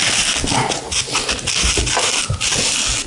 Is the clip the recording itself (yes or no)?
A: yes